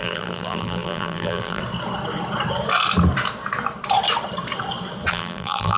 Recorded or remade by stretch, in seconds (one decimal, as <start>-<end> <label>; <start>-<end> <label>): 0.0-1.6 remade; 1.6-5.1 recorded; 5.1-5.8 remade